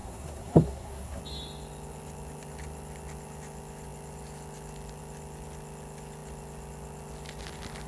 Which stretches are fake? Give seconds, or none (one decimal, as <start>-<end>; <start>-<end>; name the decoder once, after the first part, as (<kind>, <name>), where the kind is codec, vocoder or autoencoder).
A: 0.0-1.2 (codec, SNAC)